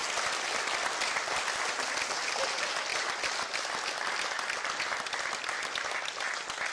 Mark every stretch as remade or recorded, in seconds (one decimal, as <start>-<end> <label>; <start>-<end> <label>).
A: 0.0-6.7 recorded